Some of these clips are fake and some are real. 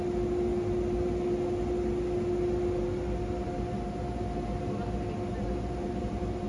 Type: real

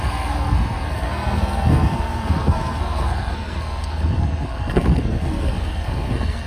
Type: fake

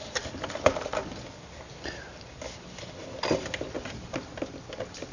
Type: real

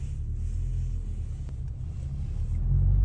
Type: real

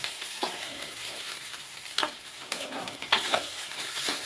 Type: fake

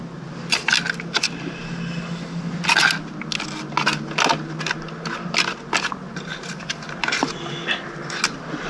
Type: real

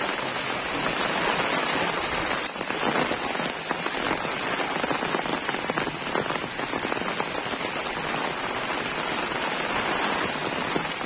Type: real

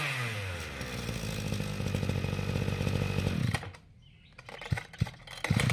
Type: real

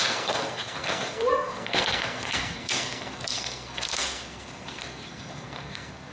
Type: fake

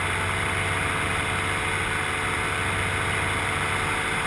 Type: real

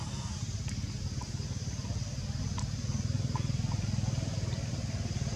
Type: real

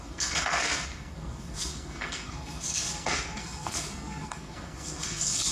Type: fake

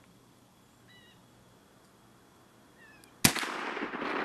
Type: real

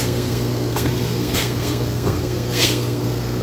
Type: fake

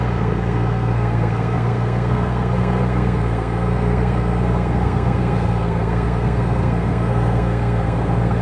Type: fake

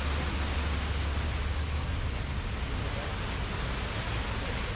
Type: real